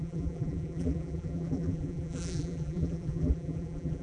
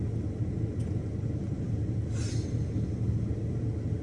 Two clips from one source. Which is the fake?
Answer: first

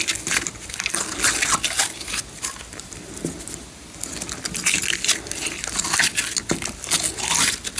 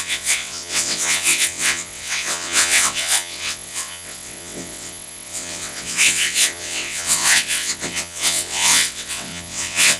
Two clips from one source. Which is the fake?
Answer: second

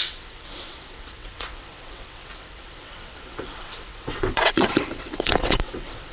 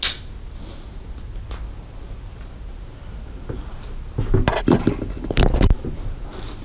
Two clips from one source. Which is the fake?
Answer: first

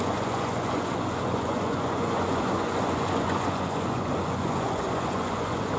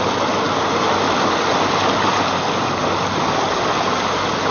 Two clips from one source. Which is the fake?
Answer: first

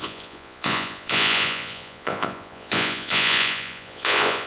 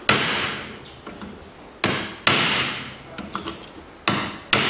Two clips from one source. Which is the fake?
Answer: first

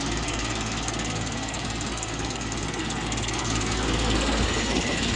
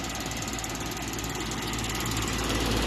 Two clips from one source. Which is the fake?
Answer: first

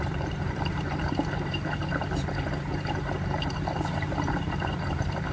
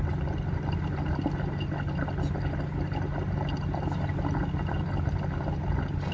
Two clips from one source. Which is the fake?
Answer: first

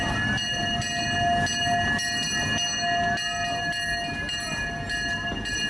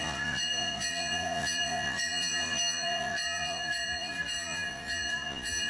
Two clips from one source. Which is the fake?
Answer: second